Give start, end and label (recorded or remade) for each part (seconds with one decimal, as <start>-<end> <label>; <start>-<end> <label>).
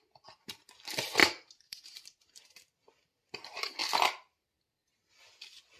0.0-1.2 recorded; 1.2-2.4 remade; 2.4-5.8 recorded